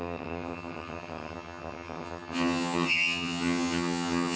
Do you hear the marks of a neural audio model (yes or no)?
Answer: yes